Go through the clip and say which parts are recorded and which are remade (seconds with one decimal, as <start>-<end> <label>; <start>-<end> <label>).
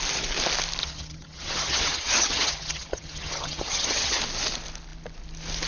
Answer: 0.0-0.8 recorded; 0.8-4.2 remade; 4.2-5.7 recorded